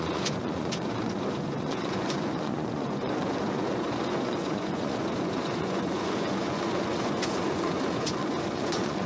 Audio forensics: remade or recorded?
remade